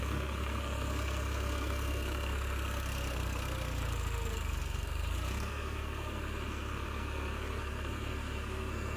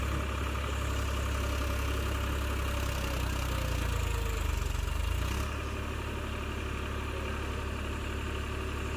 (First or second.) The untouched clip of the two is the second